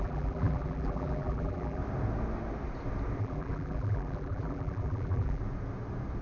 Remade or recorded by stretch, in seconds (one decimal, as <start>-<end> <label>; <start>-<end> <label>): 0.0-1.8 remade; 1.8-3.2 recorded; 3.2-5.4 remade; 5.4-6.2 recorded